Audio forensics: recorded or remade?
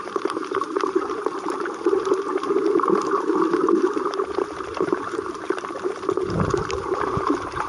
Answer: remade